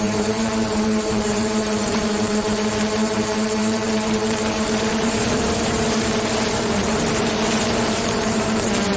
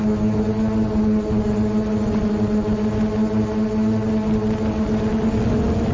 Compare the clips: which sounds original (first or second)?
second